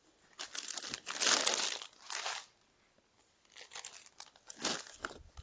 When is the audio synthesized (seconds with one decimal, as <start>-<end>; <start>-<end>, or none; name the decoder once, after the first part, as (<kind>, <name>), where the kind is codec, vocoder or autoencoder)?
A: none